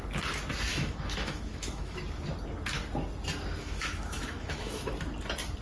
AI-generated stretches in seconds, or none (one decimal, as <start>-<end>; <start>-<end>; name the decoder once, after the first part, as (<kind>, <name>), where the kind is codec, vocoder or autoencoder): 0.7-2.0 (autoencoder, DAC-VAE); 3.6-4.9